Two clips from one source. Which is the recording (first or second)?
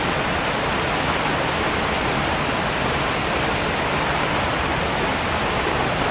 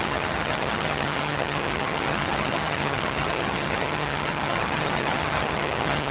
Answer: first